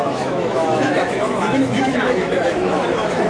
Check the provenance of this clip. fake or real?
fake